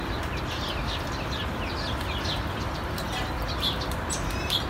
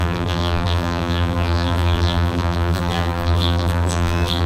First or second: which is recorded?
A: first